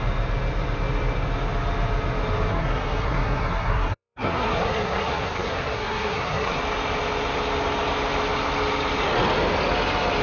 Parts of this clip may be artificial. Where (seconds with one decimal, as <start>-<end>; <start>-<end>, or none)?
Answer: 2.5-6.6